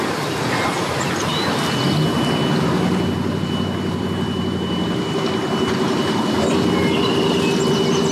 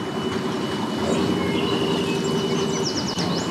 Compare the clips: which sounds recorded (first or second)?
second